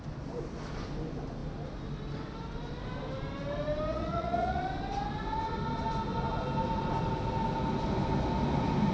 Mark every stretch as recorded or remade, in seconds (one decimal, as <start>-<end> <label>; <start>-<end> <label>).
0.0-3.9 recorded; 3.9-4.6 remade; 4.6-8.9 recorded